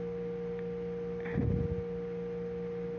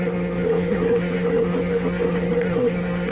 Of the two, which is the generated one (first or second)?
second